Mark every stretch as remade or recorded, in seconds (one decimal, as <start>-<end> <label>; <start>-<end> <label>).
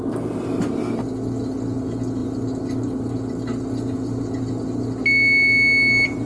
0.0-6.3 recorded